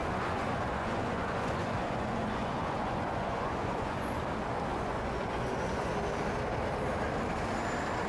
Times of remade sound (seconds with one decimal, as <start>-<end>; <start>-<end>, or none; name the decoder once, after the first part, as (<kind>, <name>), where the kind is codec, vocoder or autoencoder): 0.0-4.2 (vocoder, Vocos); 4.7-5.9

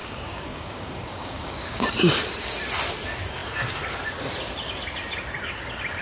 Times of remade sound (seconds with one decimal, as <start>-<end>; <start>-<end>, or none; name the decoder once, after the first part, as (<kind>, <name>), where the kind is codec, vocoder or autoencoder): 0.0-1.9 (codec, DAC)

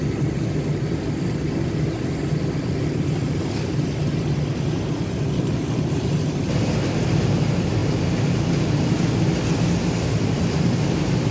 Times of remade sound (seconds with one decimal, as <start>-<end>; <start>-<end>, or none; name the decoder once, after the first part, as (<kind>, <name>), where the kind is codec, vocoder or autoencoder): none

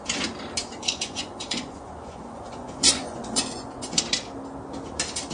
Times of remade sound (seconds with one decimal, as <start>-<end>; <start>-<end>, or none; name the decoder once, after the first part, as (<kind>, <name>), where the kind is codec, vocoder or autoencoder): 0.8-4.0 (vocoder, Vocos)

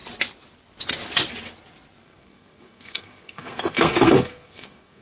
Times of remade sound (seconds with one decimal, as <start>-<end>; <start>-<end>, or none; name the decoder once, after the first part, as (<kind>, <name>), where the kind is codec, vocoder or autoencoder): 2.0-5.0 (codec, SNAC)

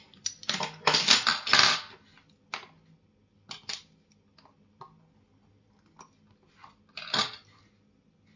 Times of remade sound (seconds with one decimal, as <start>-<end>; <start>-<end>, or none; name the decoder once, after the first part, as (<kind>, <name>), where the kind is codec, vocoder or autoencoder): none

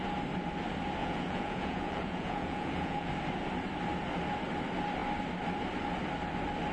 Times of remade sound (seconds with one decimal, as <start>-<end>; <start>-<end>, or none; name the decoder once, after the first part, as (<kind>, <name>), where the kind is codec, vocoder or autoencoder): 1.0-3.1 (vocoder, Vocos)

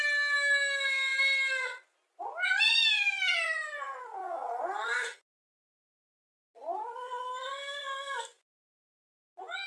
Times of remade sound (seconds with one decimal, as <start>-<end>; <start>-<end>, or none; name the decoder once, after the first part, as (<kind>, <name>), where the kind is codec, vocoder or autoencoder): none